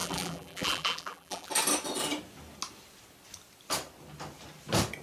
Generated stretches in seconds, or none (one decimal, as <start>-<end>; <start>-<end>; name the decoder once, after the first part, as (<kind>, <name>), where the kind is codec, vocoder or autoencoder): 0.0-1.5 (vocoder, BigVGAN v2)